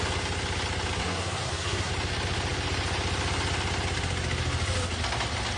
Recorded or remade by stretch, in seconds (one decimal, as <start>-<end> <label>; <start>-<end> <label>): 0.0-1.0 recorded; 1.0-1.9 remade; 1.9-5.6 recorded